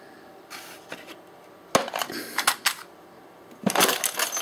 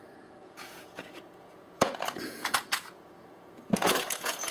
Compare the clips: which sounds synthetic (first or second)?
second